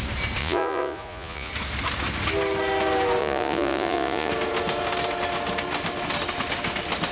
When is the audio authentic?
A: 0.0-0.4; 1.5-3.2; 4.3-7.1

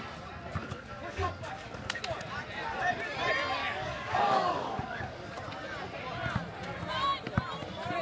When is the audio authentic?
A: 0.0-0.6; 2.0-3.6; 5.3-8.0